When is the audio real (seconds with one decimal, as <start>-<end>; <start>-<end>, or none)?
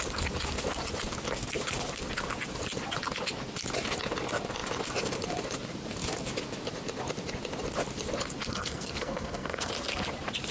0.0-8.4; 9.7-10.5